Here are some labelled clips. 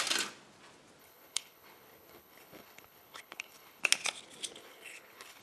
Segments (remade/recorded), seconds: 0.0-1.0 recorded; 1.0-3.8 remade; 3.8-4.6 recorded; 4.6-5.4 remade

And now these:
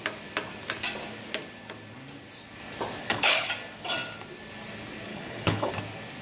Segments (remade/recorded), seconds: 0.0-3.0 recorded; 3.0-3.5 remade; 3.5-5.1 recorded; 5.1-5.7 remade; 5.7-6.2 recorded

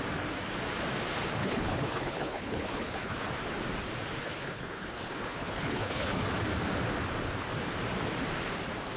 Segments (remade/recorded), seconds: 0.0-1.4 recorded; 1.4-3.2 remade; 3.2-4.2 recorded; 4.2-6.2 remade; 6.2-9.0 recorded